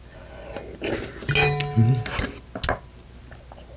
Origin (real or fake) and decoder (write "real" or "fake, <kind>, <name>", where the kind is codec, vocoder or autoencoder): real